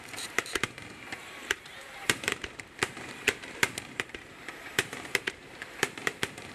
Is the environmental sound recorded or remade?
remade